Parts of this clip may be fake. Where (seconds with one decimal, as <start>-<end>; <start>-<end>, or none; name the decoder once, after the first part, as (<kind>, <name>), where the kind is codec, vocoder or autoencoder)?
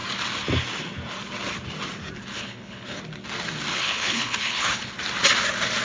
2.3-3.0 (codec, HILCodec); 3.7-4.9